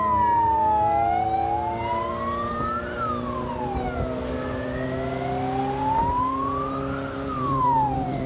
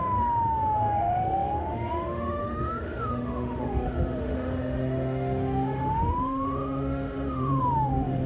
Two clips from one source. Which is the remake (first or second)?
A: second